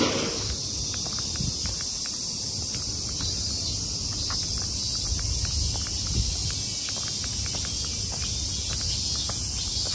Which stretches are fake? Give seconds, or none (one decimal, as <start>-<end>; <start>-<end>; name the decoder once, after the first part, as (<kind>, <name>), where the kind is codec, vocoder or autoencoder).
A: none